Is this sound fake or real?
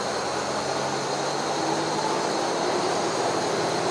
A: real